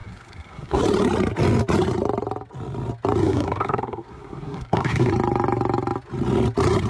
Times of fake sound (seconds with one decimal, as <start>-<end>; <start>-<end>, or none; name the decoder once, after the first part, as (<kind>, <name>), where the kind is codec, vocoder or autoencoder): 0.0-0.8 (codec, SNAC); 3.2-5.1